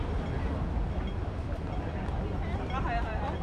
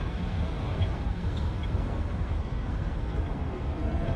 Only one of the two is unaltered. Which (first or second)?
first